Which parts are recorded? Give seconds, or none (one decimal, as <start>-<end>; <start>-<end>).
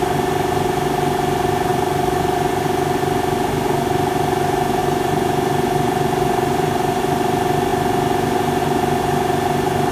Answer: 0.0-1.7; 2.5-4.8; 7.0-9.9